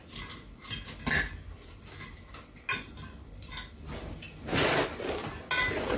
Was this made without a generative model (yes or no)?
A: yes